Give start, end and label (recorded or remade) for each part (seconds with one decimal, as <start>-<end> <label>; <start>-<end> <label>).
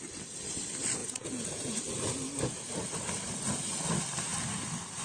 0.0-1.0 recorded; 1.0-1.8 remade; 1.8-5.0 recorded